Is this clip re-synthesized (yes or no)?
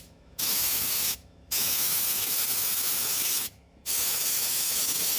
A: yes